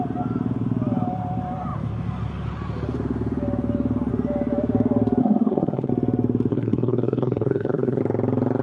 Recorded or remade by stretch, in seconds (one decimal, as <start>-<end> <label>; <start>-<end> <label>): 0.0-5.2 recorded; 5.2-5.9 remade; 5.9-6.5 recorded; 6.5-8.0 remade; 8.0-8.6 recorded

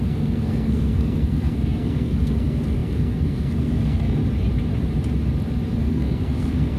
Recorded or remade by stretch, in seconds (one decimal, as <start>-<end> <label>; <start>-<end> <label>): 0.0-4.2 remade; 4.2-5.8 recorded; 5.8-6.8 remade